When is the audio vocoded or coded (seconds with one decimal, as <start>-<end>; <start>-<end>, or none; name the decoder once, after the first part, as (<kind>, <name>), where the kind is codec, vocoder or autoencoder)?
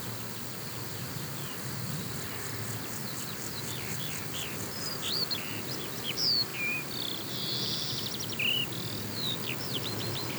none